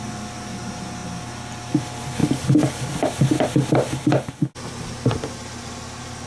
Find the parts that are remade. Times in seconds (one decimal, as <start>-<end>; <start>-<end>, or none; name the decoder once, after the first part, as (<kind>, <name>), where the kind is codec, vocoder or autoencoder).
none